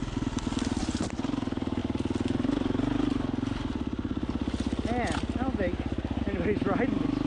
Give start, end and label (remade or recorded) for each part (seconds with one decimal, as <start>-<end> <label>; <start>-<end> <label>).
0.0-7.3 recorded